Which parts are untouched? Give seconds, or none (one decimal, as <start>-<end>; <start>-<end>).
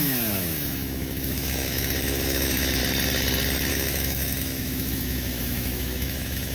2.8-3.7